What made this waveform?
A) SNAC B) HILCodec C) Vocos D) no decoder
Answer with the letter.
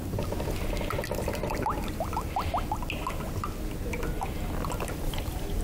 D